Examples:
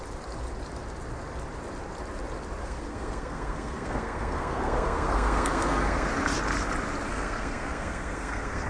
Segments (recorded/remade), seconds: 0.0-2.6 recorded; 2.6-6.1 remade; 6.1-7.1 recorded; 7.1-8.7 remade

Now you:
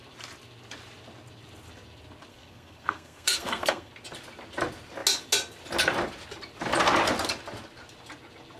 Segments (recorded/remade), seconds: 0.0-2.3 recorded; 2.3-3.9 remade; 3.9-8.6 recorded

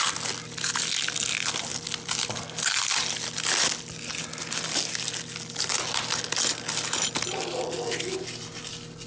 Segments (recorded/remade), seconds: 0.0-9.1 recorded

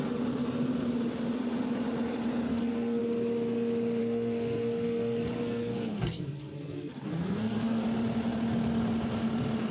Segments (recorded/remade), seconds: 0.0-2.5 recorded; 2.5-3.0 remade; 3.0-4.0 recorded; 4.0-7.8 remade; 7.8-9.7 recorded

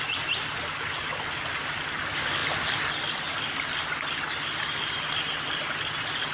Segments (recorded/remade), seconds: 0.0-6.3 recorded